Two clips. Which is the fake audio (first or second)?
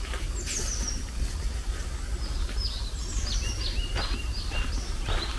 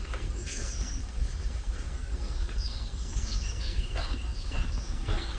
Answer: second